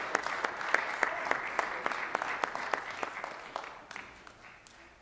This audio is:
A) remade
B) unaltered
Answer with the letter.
B